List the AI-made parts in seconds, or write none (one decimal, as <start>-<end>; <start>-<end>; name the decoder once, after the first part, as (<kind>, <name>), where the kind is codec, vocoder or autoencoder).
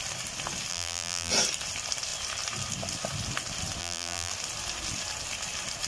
0.7-1.3 (vocoder, BigVGAN v2); 3.8-4.3